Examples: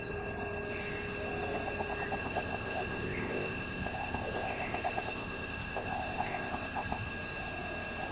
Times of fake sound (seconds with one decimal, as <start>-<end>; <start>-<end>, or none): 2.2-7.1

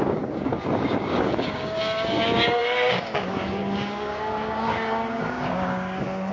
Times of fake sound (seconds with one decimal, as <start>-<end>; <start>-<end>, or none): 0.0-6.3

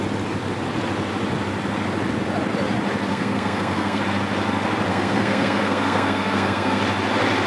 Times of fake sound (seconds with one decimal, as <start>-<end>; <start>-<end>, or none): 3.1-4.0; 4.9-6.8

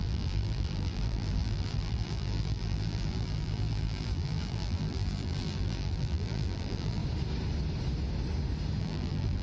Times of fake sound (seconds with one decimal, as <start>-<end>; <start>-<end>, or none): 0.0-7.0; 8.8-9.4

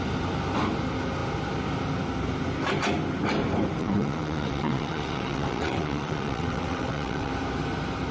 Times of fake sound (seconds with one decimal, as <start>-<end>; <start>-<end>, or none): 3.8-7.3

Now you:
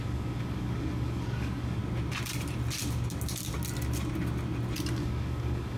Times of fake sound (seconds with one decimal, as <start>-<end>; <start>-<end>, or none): 0.0-1.8; 4.9-5.8

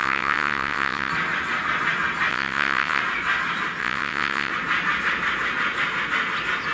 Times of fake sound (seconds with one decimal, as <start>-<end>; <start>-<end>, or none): 0.0-1.1; 2.3-3.0; 3.8-4.5

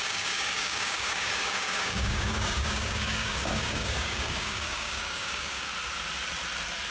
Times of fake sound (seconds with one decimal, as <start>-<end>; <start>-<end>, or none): 0.0-5.7